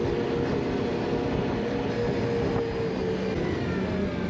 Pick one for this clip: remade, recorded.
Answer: recorded